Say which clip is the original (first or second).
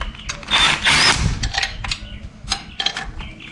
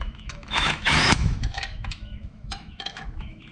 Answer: first